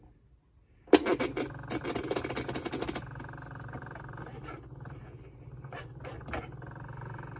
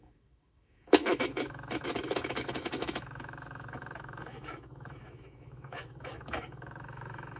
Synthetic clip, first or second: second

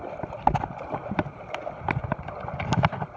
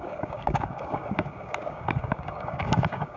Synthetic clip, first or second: second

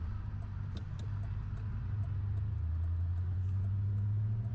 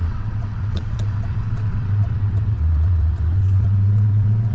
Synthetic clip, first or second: second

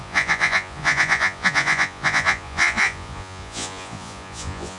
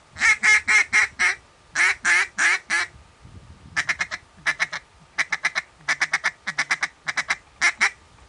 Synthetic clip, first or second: first